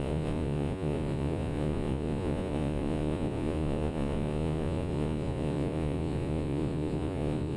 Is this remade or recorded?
remade